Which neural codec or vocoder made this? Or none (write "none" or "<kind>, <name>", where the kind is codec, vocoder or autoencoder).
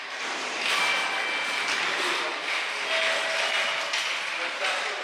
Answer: none